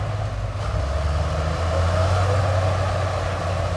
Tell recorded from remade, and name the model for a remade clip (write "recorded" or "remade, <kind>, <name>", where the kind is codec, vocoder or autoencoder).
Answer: recorded